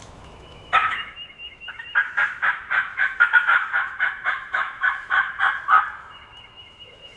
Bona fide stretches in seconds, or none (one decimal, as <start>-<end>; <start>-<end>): 5.3-6.0